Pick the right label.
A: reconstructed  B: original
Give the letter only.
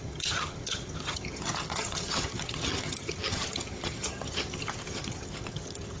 A